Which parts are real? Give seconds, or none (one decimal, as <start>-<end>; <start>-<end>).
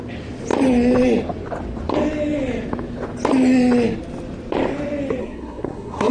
0.0-5.2